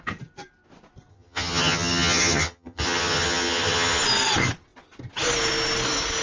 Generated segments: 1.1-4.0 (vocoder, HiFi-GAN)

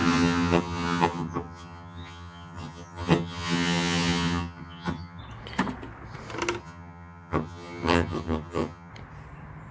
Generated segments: 0.0-5.2 (vocoder, HiFi-GAN); 6.6-8.9

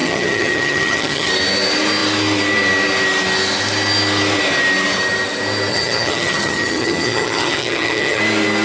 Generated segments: 0.0-1.3 (vocoder, HiFi-GAN); 5.7-8.2

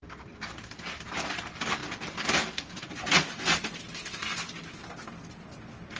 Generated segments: none

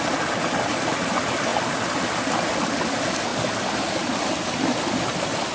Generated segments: none

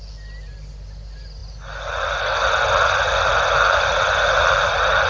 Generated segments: none

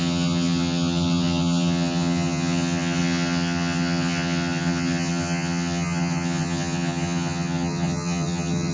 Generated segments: 0.0-8.7 (vocoder, HiFi-GAN)

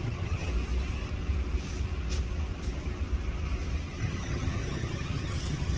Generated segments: 0.0-0.5 (vocoder, HiFi-GAN); 4.0-5.8